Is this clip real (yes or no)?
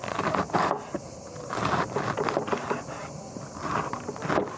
yes